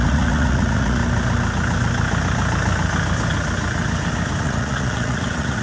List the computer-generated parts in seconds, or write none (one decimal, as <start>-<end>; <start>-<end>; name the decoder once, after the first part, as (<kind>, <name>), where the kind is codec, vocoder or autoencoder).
0.0-1.0 (vocoder, Vocos); 4.4-5.6